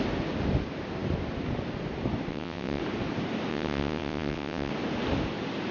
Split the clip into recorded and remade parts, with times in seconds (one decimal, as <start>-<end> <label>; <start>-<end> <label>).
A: 0.0-2.3 recorded; 2.3-2.8 remade; 2.8-3.5 recorded; 3.5-4.7 remade; 4.7-5.7 recorded